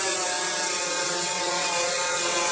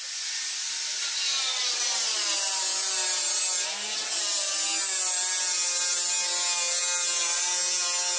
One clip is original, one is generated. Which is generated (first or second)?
first